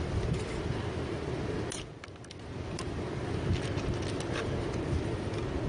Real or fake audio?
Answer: real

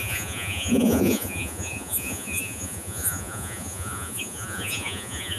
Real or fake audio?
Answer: fake